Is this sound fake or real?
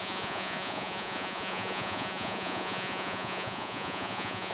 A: fake